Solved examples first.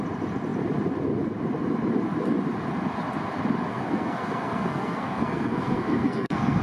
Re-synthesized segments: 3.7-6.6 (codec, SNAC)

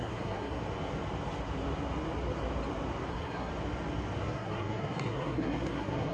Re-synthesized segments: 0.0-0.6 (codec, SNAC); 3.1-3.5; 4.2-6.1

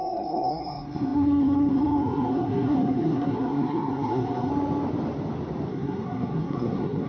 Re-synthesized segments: 0.0-4.5 (codec, SNAC); 5.7-7.1

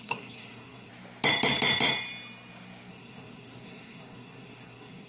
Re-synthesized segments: 0.0-0.9 (codec, SNAC); 2.9-5.1

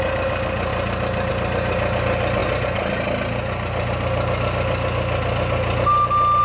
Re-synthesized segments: none

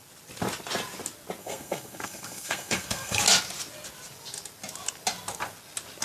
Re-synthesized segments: 1.4-3.2 (codec, SNAC)

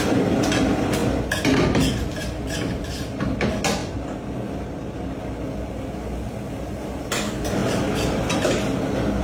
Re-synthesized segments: none